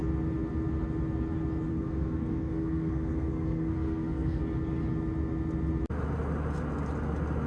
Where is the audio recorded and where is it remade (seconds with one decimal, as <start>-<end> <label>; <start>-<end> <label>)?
0.0-1.7 recorded; 1.7-4.4 remade; 4.4-7.5 recorded